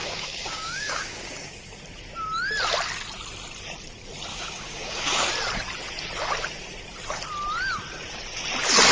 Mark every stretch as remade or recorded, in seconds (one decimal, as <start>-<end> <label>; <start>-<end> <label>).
0.0-1.7 remade; 1.7-4.3 recorded; 4.3-5.3 remade; 5.3-8.9 recorded